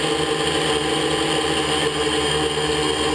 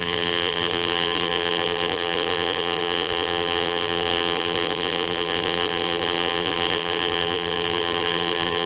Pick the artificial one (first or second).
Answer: second